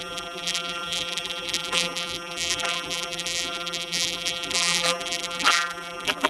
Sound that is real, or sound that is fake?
fake